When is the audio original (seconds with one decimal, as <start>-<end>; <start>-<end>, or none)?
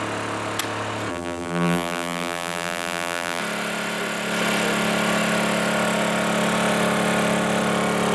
0.0-1.1; 3.4-8.1